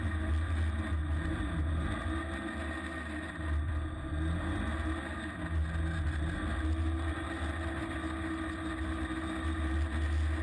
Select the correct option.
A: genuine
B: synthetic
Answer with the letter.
A